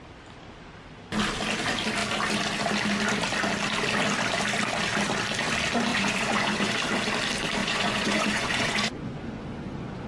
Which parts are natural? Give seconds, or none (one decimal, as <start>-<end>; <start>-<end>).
0.0-5.9; 6.7-7.6